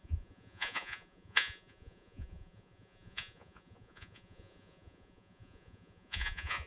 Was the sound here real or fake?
fake